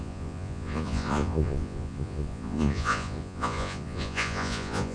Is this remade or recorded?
remade